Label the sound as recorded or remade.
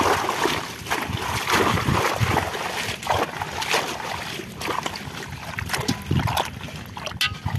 recorded